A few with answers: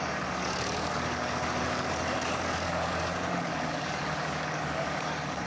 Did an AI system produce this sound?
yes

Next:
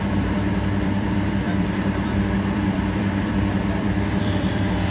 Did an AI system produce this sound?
yes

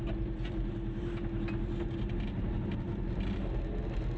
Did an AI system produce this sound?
no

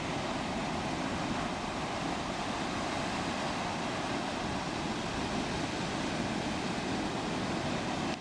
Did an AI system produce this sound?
no